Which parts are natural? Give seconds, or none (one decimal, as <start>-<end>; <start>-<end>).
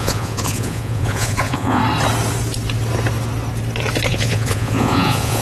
1.8-4.1